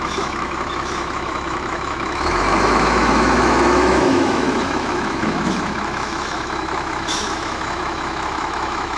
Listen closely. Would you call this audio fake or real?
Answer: fake